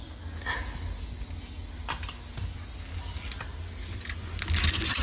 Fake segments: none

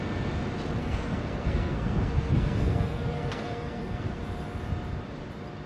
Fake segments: 0.8-4.2 (codec, SNAC)

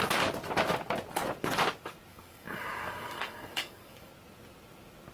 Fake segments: 2.1-4.1 (codec, DAC)